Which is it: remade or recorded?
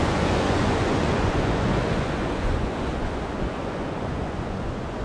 remade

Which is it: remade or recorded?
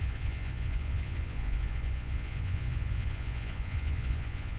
remade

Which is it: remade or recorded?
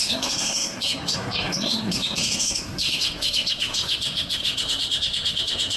remade